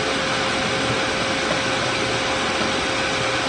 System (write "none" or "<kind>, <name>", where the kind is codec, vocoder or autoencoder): none